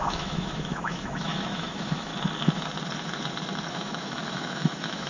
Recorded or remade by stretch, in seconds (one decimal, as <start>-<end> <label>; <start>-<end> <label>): 0.0-2.1 remade; 2.1-3.7 recorded; 3.7-5.1 remade